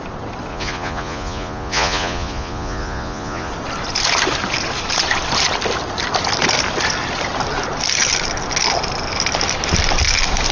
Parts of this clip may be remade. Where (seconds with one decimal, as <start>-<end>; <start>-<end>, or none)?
0.5-3.5